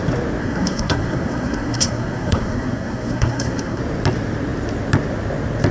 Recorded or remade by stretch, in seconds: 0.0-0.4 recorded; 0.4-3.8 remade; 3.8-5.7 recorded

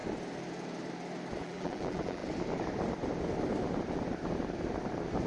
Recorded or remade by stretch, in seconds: 0.0-1.4 recorded; 1.4-2.2 remade; 2.2-5.3 recorded

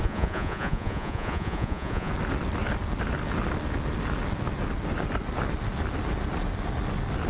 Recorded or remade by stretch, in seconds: 0.0-2.1 remade; 2.1-7.3 recorded

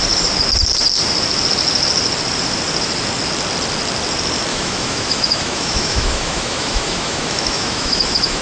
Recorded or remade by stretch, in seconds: 0.0-4.5 recorded; 4.5-8.4 remade

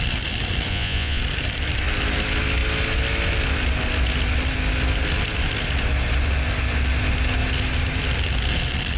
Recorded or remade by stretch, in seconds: 0.0-0.7 recorded; 0.7-1.2 remade; 1.2-9.0 recorded

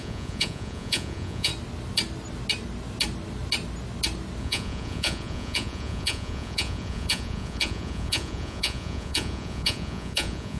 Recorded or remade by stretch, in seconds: 0.0-1.5 remade; 1.5-4.4 recorded; 4.4-10.6 remade

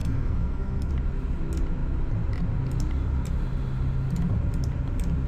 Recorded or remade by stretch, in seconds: 0.0-0.9 remade; 0.9-5.3 recorded

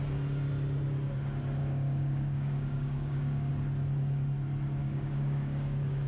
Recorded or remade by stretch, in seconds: 0.0-1.6 recorded; 1.6-3.5 remade; 3.5-4.8 recorded; 4.8-6.1 remade